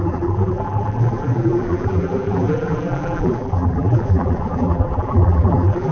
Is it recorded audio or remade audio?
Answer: remade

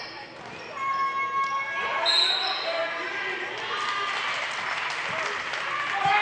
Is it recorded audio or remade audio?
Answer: recorded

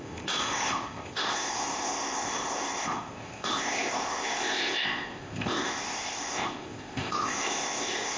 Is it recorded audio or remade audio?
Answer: remade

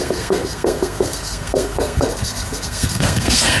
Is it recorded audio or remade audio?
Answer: remade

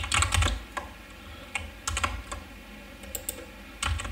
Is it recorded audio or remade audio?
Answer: recorded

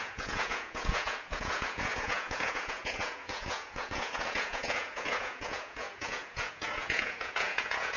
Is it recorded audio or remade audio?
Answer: remade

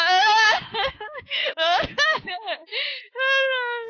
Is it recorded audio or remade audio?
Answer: remade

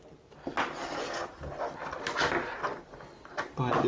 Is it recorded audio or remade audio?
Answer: recorded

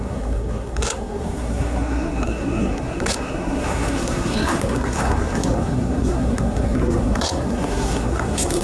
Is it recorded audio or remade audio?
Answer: remade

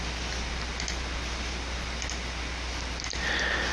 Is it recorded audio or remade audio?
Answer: recorded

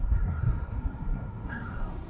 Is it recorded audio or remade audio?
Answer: remade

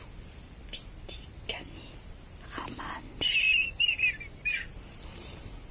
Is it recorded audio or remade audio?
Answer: recorded